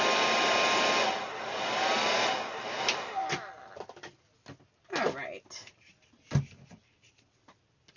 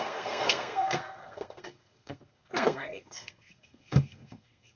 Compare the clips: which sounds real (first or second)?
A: first